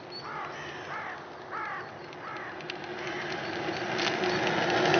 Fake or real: real